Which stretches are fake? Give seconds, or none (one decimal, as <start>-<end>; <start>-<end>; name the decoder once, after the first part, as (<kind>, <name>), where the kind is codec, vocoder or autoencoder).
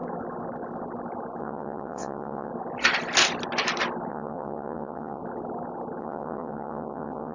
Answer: 1.4-2.5 (vocoder, WaveNeXt); 4.1-5.2; 6.0-7.3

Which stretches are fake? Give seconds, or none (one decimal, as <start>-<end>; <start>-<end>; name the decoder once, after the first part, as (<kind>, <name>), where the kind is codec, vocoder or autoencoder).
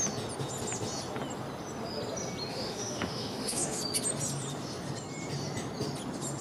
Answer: 2.5-3.8 (autoencoder, DAC-VAE)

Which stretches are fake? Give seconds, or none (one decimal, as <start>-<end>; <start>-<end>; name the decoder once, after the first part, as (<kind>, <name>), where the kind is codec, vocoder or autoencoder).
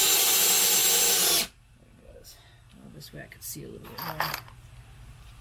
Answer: none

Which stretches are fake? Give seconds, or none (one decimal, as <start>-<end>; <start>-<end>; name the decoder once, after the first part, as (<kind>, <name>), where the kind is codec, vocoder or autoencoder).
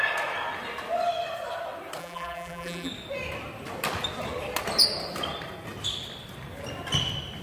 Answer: 2.0-2.9 (vocoder, BigVGAN v2)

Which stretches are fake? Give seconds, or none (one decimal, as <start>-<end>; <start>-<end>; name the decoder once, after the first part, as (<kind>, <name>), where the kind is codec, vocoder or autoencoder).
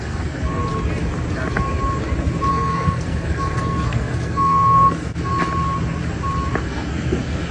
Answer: 0.0-0.6 (codec, SNAC); 2.5-5.3; 6.6-7.5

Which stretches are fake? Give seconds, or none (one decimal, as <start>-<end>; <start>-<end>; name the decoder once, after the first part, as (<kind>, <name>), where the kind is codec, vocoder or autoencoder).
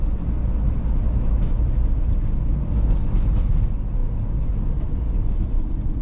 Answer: none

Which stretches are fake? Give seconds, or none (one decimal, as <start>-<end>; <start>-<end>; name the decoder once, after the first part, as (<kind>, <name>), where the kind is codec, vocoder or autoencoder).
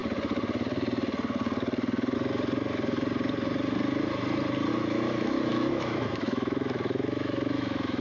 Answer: 4.7-8.0 (autoencoder, DAC-VAE)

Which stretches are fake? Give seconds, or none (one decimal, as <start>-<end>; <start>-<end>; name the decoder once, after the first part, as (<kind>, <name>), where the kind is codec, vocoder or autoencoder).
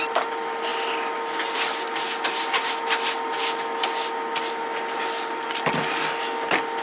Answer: none